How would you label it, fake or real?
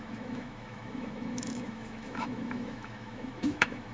fake